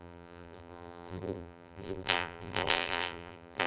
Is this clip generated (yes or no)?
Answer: yes